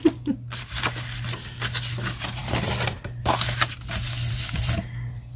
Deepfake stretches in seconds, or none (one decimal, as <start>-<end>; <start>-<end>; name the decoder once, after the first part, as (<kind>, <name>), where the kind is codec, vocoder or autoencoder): none

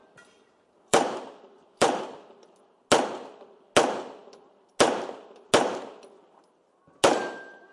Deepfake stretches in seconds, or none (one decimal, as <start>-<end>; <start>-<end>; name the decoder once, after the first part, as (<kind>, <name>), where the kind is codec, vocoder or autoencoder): 0.0-2.0 (vocoder, BigVGAN v2)

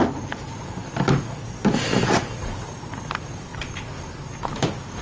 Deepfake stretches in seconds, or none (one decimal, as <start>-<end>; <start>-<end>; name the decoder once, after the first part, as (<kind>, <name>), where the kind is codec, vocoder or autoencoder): none

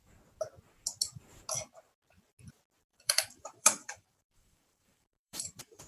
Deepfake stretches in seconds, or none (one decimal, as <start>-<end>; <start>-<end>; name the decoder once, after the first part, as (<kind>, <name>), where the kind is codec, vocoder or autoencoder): 2.9-5.9 (vocoder, BigVGAN v2)

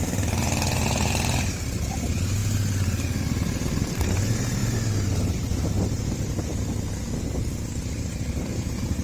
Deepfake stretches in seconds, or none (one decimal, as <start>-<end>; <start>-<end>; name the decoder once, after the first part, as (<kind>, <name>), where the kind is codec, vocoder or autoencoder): none

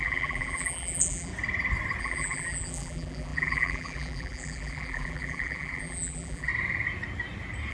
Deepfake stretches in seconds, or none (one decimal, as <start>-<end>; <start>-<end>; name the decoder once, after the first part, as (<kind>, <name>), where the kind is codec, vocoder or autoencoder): 0.0-1.3 (vocoder, BigVGAN v2); 2.0-6.5

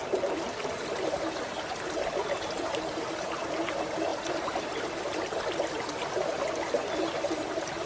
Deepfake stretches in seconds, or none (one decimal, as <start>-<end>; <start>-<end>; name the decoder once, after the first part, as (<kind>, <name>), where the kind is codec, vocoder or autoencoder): none

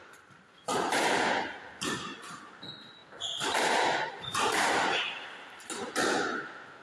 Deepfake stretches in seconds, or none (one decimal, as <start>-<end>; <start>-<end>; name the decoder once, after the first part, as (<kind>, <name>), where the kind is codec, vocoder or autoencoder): 0.7-2.4 (vocoder, BigVGAN v2); 3.0-5.9